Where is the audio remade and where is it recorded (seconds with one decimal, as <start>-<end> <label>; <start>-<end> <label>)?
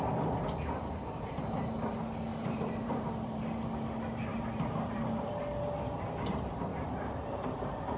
0.0-2.3 recorded; 2.3-3.4 remade; 3.4-4.3 recorded; 4.3-5.4 remade; 5.4-6.7 recorded; 6.7-8.0 remade